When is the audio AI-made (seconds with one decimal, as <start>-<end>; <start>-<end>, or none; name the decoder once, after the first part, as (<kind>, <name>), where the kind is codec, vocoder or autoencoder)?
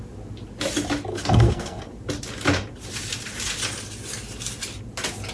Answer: 1.1-1.8 (codec, SNAC)